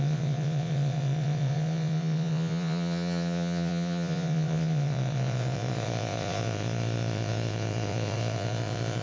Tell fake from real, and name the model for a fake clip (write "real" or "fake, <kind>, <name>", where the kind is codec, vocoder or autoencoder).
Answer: fake, vocoder, Vocos